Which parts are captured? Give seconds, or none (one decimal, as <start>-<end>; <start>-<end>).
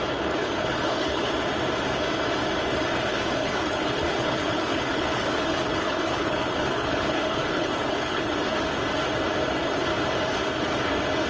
0.0-0.4; 1.3-3.4; 8.3-11.3